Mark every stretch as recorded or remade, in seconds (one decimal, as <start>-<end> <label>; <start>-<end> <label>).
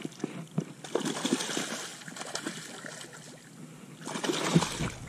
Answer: 0.0-5.1 recorded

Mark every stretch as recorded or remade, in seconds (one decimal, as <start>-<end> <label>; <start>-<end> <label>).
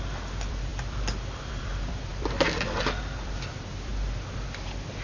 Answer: 0.0-3.9 remade; 3.9-5.0 recorded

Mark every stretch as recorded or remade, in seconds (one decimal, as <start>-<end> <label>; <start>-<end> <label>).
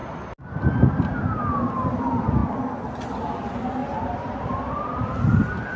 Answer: 0.0-3.8 recorded; 3.8-5.8 remade